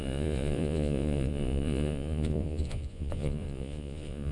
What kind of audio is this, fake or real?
fake